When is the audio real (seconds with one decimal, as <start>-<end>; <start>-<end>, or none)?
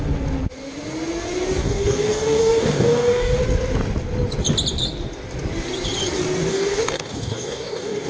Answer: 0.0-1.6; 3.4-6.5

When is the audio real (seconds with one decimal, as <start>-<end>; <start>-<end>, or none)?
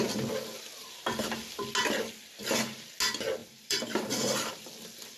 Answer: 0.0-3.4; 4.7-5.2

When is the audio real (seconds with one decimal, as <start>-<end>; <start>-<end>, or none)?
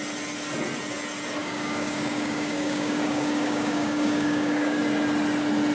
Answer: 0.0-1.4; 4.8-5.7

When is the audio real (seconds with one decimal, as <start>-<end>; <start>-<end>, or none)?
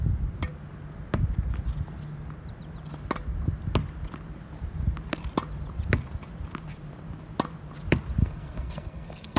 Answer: 0.0-8.2